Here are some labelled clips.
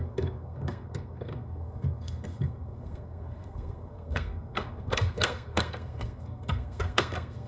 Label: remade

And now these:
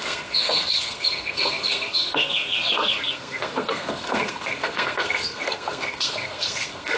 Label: remade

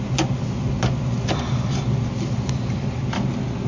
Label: recorded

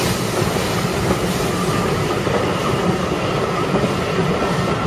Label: recorded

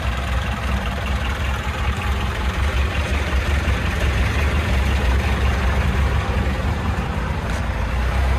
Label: remade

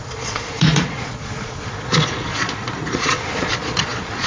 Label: remade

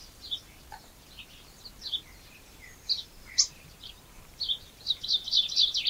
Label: remade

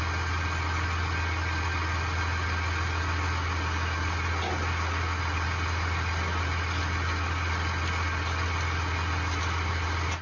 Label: recorded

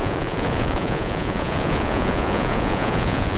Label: remade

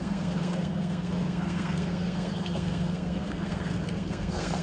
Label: remade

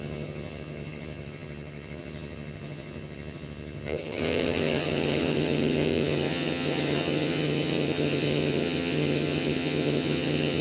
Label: remade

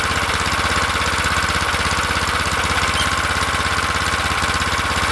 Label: recorded